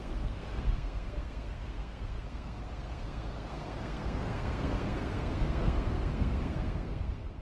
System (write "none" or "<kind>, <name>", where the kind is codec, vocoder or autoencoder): codec, SNAC